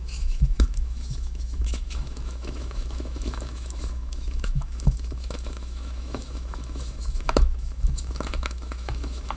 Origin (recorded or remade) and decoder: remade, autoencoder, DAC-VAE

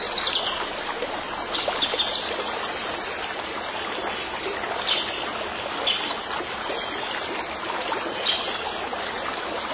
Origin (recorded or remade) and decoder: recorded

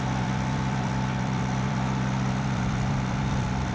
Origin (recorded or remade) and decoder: remade, vocoder, BigVGAN v2